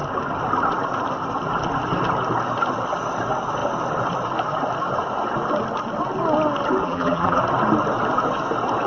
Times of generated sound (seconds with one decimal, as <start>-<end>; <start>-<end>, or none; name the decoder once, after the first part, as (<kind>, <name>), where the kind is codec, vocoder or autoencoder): 6.8-7.4 (vocoder, BigVGAN v2)